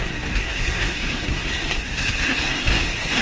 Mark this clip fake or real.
fake